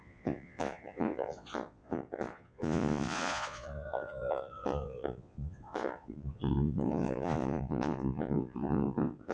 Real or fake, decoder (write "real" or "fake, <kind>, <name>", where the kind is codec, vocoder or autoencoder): fake, vocoder, Vocos